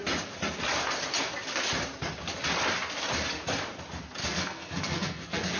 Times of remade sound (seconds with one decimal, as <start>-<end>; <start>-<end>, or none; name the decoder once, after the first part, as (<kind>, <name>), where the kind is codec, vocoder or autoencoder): 4.2-5.6 (codec, SNAC)